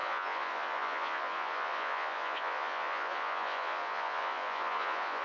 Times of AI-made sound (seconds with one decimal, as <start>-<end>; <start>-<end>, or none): 0.0-5.2